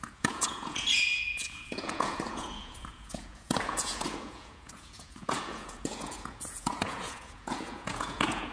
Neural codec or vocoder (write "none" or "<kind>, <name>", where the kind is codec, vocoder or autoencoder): vocoder, Vocos